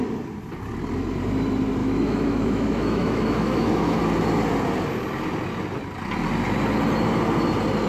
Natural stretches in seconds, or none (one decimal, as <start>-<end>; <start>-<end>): 0.0-1.8; 4.0-7.9